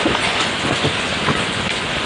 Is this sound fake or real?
fake